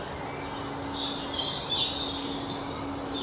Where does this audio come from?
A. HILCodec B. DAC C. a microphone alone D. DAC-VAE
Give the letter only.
C